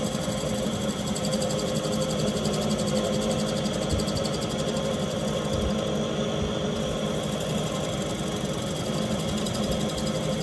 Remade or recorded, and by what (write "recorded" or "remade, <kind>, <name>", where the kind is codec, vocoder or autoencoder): recorded